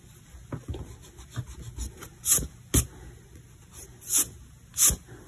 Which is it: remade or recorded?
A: recorded